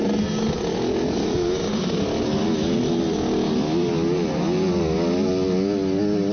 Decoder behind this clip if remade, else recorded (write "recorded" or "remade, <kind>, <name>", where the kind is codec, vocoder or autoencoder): recorded